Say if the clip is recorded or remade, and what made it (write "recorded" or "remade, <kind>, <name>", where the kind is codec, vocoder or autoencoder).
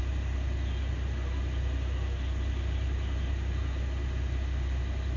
recorded